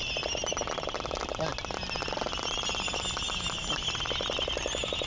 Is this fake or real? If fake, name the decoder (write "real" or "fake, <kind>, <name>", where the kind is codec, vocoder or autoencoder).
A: real